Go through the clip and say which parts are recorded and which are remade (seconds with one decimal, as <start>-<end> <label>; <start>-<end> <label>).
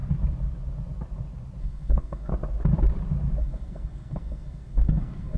0.0-1.6 recorded; 1.6-2.3 remade; 2.3-3.4 recorded; 3.4-5.4 remade